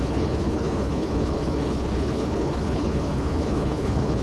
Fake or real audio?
fake